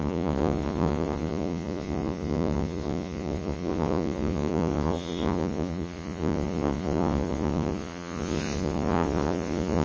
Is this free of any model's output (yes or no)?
no